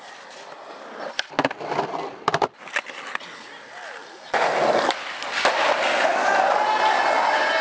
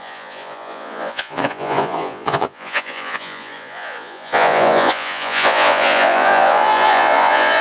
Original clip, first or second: first